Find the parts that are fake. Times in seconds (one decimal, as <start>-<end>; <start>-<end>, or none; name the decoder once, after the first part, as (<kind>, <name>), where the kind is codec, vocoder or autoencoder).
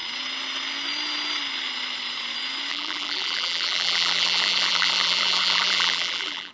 2.7-6.5 (vocoder, BigVGAN v2)